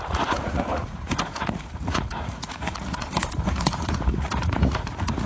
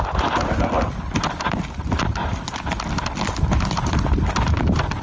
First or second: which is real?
second